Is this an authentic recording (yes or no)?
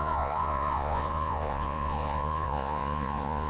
no